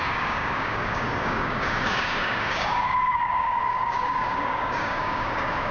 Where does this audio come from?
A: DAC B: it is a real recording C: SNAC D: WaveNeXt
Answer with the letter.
A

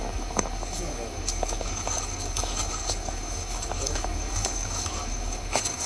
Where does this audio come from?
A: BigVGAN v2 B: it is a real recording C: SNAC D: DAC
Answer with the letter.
D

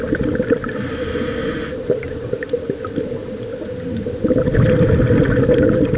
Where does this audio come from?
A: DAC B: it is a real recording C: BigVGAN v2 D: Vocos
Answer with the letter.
B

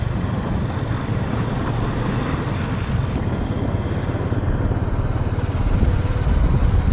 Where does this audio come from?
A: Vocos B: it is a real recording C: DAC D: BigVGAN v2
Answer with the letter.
B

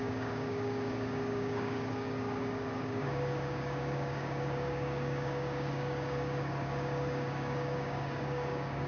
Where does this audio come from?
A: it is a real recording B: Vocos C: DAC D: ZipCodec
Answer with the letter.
C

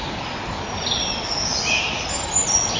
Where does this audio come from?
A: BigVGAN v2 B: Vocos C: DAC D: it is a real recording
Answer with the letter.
D